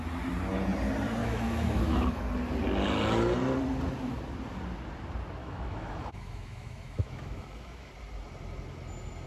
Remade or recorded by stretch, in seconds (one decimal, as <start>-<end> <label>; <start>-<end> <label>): 0.0-1.2 recorded; 1.2-2.2 remade; 2.2-5.4 recorded; 5.4-7.9 remade; 7.9-9.3 recorded